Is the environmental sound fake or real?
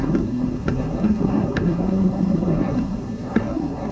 fake